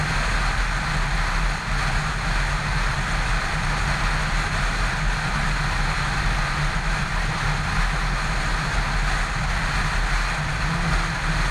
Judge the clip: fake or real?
real